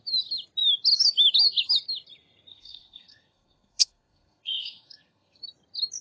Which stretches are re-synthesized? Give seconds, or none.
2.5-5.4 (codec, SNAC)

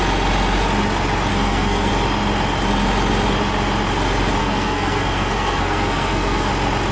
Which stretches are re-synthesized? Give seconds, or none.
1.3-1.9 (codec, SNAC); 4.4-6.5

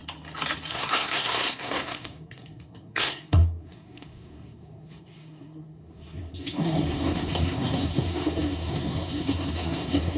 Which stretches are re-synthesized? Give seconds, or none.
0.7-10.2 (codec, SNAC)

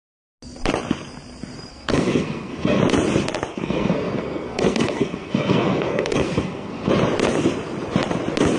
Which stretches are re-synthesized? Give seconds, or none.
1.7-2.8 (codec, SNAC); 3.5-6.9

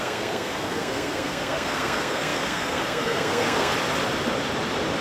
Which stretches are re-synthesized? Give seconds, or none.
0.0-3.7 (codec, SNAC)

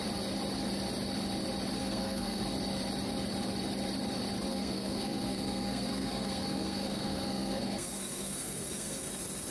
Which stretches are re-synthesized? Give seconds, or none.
1.8-2.4 (codec, SNAC); 4.5-9.1

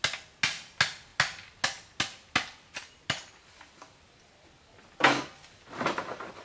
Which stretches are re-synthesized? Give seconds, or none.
none

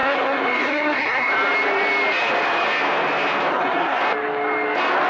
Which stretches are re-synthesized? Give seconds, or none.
0.0-1.3 (codec, SNAC); 3.5-4.0